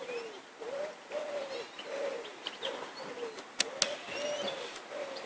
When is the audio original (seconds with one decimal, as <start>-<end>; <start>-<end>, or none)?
0.0-5.3